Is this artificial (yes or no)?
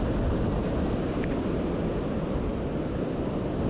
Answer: no